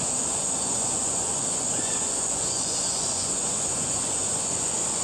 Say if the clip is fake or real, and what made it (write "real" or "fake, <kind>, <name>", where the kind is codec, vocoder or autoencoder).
fake, vocoder, Vocos